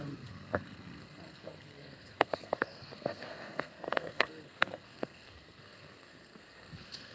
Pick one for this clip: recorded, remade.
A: remade